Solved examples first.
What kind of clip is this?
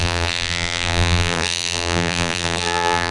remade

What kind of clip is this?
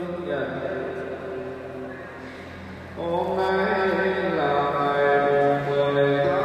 recorded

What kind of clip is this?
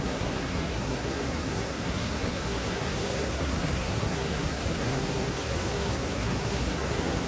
remade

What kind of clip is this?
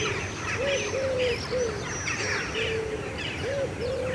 recorded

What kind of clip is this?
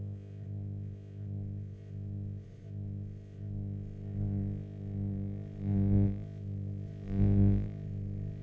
remade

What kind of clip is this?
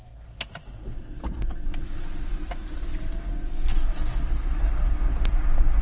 recorded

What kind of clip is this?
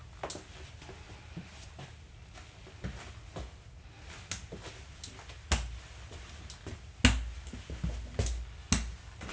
recorded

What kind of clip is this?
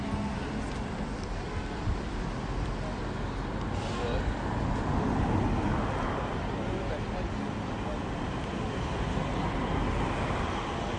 recorded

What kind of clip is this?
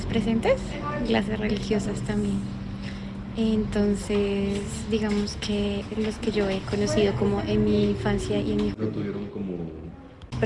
recorded